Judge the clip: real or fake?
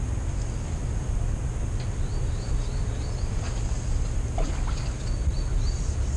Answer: real